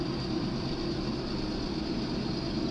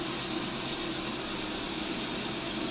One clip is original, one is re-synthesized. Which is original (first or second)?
second